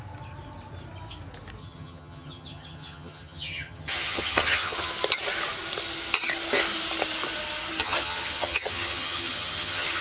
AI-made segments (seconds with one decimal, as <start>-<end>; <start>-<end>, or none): 1.6-4.9; 7.8-10.0